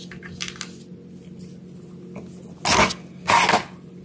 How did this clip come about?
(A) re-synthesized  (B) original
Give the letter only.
B